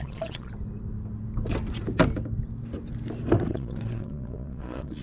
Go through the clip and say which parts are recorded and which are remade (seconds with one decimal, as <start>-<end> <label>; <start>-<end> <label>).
0.0-0.5 remade; 0.5-3.5 recorded; 3.5-5.0 remade